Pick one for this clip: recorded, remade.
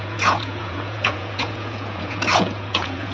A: remade